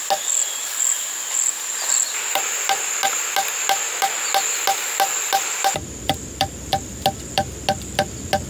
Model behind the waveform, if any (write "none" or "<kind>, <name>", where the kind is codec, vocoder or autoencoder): none